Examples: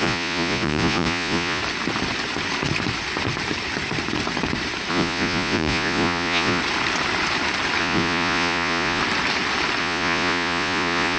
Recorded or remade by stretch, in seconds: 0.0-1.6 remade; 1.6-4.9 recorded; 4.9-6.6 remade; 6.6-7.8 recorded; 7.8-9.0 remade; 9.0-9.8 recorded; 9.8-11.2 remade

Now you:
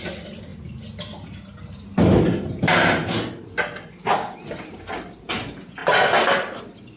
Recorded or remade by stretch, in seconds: 0.0-7.0 recorded